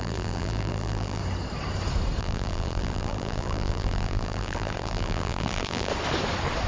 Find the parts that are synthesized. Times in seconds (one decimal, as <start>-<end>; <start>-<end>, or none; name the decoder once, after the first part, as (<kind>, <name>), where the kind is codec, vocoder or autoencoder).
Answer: 0.0-1.2 (vocoder, BigVGAN v2); 2.2-5.9